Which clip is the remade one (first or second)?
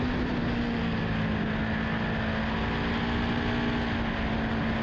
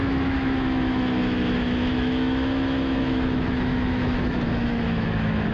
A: second